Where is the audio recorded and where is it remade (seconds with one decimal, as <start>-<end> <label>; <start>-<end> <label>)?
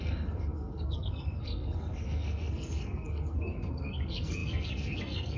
0.0-5.4 remade